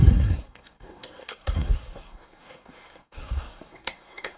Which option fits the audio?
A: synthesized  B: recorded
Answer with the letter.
A